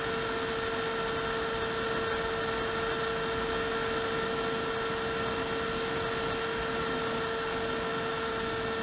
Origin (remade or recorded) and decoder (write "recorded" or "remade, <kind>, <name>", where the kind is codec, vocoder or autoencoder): recorded